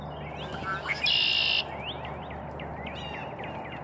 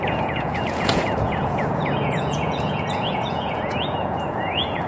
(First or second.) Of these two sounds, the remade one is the second